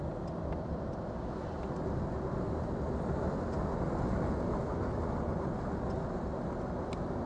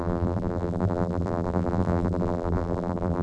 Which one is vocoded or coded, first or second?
second